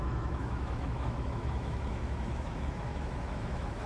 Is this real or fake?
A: fake